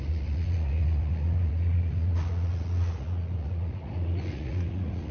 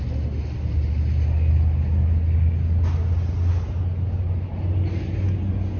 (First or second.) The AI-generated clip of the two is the first